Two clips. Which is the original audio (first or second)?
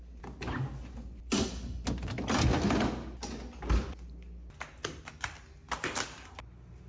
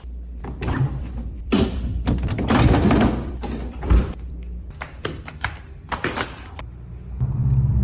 first